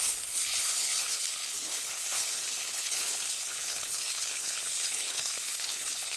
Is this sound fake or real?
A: fake